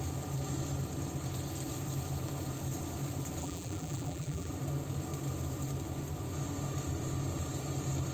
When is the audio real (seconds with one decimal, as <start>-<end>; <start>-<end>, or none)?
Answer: 0.0-3.4; 4.5-8.1